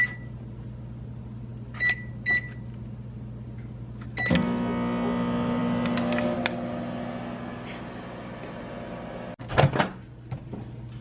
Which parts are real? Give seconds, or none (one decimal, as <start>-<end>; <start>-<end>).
0.0-11.0